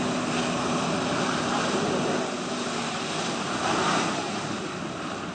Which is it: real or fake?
real